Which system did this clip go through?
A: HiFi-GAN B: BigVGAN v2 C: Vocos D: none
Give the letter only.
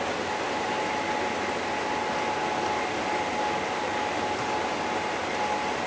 D